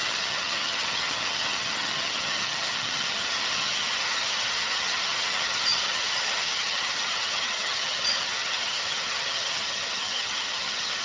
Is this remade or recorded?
remade